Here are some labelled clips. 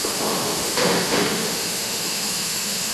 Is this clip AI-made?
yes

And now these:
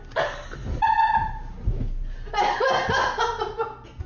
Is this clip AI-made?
no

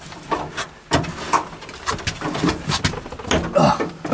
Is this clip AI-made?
no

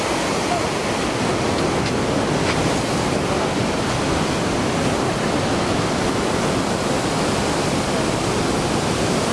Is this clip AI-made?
no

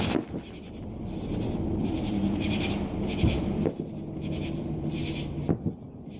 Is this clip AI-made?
no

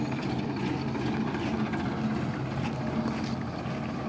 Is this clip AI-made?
no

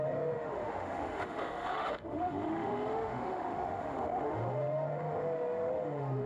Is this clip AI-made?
yes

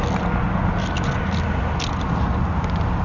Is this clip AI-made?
no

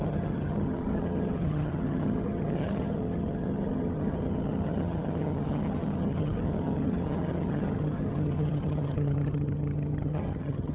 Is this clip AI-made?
yes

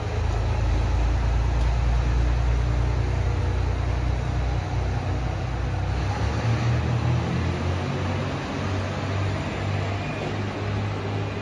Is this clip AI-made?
no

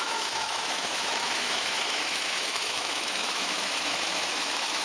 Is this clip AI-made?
yes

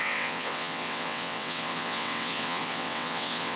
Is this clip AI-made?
yes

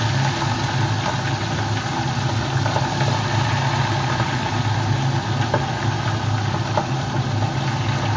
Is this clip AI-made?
no